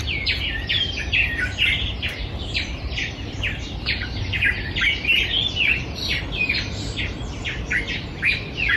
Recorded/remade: remade